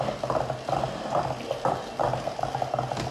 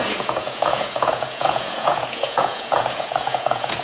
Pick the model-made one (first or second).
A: second